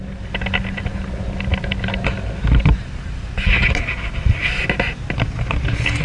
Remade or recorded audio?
recorded